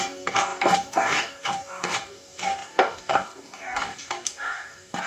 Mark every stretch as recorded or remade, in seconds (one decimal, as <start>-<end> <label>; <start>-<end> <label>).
0.0-5.1 remade